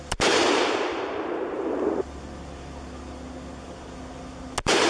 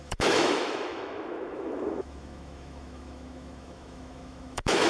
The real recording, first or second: first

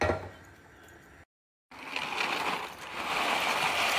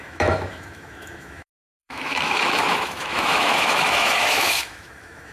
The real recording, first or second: first